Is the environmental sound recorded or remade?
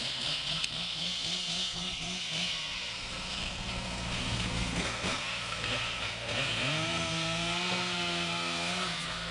remade